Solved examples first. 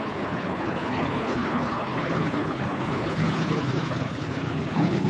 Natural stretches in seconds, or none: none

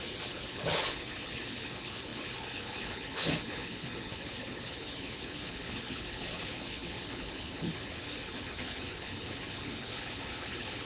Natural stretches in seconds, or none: none

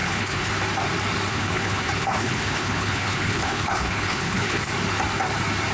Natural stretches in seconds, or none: 0.5-1.3; 4.7-5.7

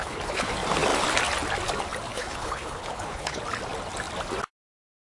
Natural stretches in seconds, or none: 0.5-2.1; 3.4-5.2

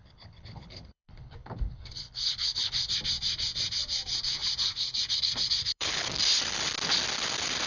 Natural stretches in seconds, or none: 2.9-5.6; 6.1-7.7

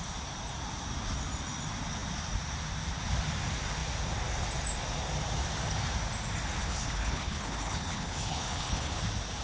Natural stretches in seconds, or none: 0.0-6.6; 9.0-9.4

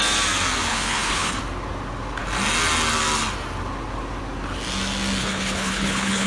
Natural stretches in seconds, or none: 0.0-0.7; 1.4-5.2

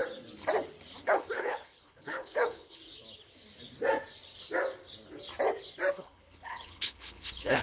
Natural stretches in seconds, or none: 0.0-1.0; 2.8-5.9